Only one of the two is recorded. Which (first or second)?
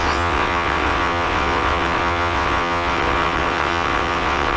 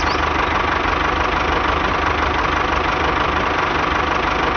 second